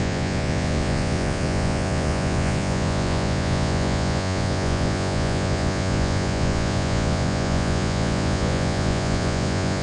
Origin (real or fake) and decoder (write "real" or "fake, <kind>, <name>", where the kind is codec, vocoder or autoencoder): fake, vocoder, Vocos